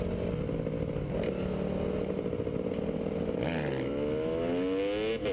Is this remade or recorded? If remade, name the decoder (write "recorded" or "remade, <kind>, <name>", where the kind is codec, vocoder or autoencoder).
recorded